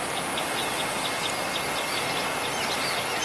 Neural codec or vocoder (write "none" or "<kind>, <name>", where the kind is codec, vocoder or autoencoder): none